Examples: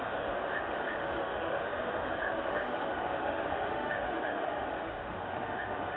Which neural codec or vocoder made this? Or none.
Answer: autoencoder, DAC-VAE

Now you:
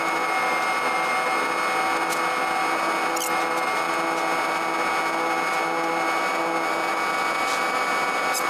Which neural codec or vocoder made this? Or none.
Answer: none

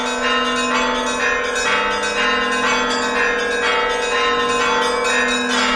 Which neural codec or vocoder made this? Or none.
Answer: none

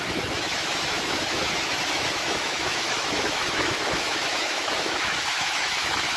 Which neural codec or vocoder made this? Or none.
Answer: autoencoder, DAC-VAE